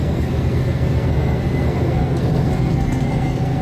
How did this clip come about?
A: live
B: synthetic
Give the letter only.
B